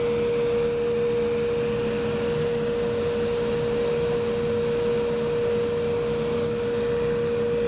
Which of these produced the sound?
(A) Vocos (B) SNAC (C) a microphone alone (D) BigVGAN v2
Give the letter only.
C